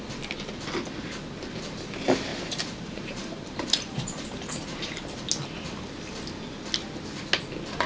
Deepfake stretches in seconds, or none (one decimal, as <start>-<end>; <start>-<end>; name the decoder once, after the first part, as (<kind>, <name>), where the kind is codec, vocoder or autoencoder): 2.3-5.2 (vocoder, BigVGAN v2)